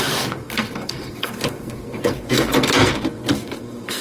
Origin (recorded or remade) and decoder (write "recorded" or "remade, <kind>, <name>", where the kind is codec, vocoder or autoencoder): remade, codec, SNAC